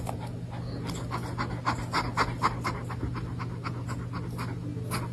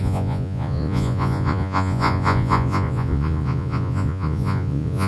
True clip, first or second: first